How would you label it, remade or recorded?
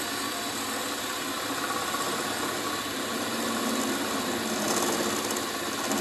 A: recorded